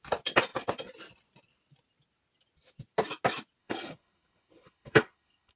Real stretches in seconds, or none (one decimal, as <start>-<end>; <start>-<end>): 0.0-3.6